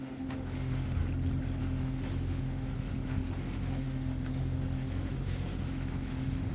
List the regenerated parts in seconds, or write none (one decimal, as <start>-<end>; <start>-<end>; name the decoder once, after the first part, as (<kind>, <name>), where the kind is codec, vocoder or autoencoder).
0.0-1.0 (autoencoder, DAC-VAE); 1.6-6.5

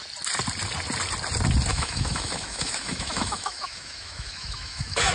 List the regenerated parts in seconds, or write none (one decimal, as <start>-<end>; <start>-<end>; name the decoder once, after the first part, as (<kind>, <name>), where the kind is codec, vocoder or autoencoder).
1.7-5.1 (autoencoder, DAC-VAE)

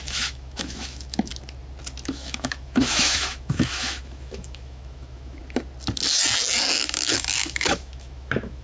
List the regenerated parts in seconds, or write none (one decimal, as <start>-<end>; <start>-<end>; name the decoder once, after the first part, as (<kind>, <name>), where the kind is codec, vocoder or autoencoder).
0.0-1.3 (autoencoder, DAC-VAE); 2.1-5.4; 6.7-8.6

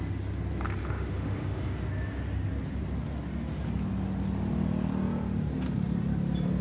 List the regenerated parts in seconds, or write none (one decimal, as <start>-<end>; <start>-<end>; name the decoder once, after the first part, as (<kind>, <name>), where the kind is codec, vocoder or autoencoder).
0.8-1.6 (autoencoder, DAC-VAE)